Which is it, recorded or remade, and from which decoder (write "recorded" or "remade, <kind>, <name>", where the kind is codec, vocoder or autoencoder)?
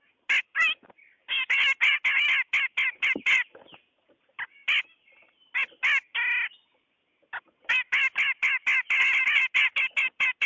recorded